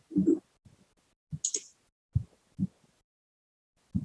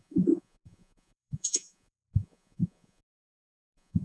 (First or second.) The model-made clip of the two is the second